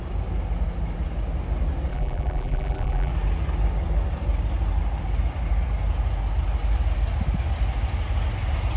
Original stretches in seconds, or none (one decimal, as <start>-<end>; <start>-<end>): 0.0-1.9; 3.1-8.8